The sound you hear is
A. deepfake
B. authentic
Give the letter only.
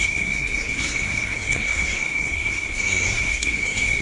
A